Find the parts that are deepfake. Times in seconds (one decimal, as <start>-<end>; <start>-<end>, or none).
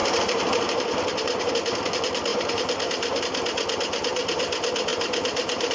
0.0-1.5; 2.3-3.2; 4.9-5.7